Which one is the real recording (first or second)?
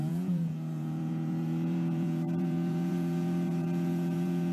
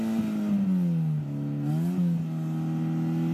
second